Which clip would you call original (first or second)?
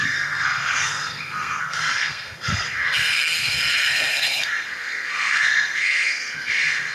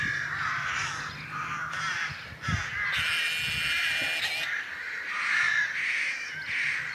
second